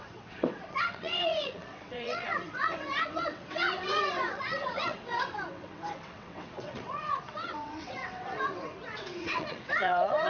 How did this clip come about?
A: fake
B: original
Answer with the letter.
A